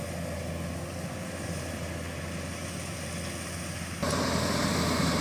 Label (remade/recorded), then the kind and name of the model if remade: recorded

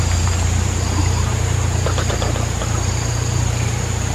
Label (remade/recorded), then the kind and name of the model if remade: remade, vocoder, BigVGAN v2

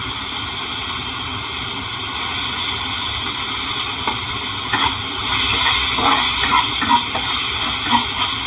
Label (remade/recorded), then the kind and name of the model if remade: recorded